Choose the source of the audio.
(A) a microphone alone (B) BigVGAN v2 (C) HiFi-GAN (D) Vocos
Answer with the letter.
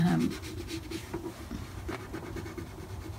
B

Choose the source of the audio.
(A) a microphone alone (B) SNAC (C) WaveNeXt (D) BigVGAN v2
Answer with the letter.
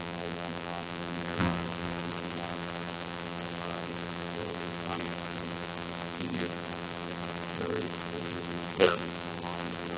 D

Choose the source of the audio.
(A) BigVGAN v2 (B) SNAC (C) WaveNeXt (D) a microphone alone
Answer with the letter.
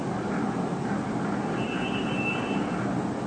D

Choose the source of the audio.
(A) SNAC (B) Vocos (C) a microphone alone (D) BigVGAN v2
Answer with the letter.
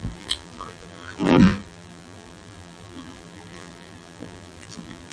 D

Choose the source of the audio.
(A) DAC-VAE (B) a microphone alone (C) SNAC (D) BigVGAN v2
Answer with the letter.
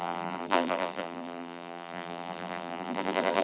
D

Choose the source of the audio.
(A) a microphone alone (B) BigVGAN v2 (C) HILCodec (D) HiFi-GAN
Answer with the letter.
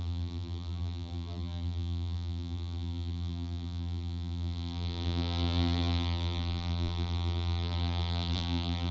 B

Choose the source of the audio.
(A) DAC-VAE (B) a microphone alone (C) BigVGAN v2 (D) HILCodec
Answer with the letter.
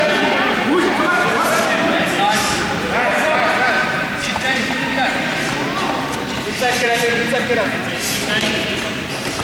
C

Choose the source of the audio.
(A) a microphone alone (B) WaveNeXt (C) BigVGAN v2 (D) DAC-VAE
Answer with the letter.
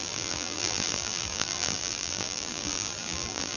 C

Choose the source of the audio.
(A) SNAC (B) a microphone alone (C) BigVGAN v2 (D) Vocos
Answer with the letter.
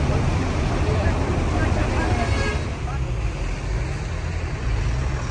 B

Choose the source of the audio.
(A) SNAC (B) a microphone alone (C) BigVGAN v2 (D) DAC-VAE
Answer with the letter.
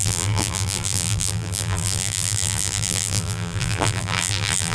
C